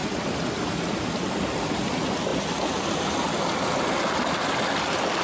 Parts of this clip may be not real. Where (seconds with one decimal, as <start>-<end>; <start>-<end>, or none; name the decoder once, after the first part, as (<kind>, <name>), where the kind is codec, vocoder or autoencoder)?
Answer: none

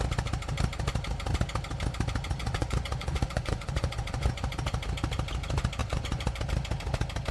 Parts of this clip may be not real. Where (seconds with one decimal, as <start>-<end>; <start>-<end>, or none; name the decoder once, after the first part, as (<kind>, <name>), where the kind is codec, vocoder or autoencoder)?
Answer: 2.4-4.5 (vocoder, Vocos); 5.8-6.4